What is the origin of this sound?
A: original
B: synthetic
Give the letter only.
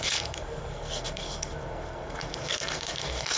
B